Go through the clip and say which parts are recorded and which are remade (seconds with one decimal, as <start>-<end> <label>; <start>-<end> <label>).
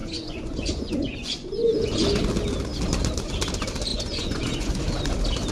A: 0.0-2.2 remade; 2.2-3.9 recorded; 3.9-4.8 remade; 4.8-5.5 recorded